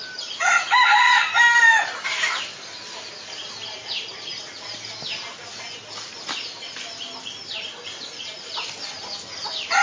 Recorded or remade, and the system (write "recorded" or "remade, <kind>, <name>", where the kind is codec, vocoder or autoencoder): recorded